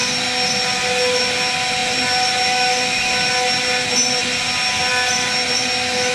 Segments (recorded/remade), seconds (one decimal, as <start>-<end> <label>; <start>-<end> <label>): 0.0-6.1 recorded